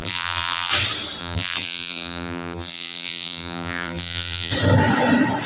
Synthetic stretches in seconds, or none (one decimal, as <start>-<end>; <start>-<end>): 0.0-0.7; 1.2-4.5